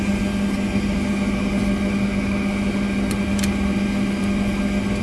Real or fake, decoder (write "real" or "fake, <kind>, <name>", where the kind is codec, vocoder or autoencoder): real